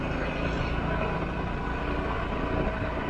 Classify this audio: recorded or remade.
recorded